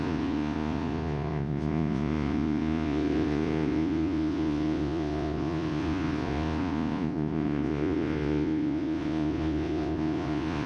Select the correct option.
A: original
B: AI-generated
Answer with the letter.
B